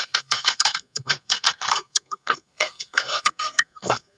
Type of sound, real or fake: fake